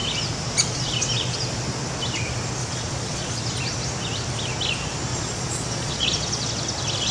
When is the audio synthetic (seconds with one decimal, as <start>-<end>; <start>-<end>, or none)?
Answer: 2.6-3.4; 5.1-6.5